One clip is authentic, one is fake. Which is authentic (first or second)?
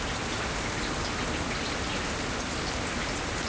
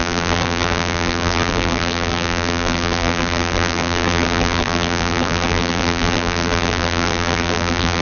first